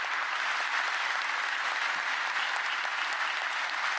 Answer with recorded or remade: recorded